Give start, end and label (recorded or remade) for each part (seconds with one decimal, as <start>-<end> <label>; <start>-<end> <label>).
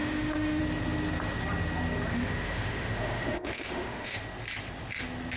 0.0-0.6 remade; 0.6-2.1 recorded; 2.1-4.2 remade; 4.2-5.4 recorded